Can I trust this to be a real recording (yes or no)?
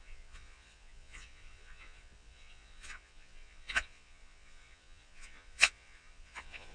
no